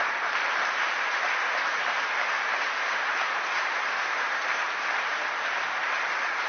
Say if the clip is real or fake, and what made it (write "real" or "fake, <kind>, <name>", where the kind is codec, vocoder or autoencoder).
fake, vocoder, BigVGAN v2